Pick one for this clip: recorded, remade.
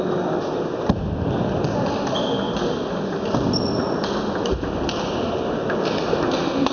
recorded